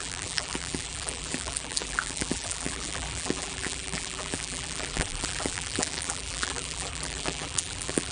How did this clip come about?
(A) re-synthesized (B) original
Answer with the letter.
A